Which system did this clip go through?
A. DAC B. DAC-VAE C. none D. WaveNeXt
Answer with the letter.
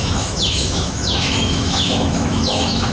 B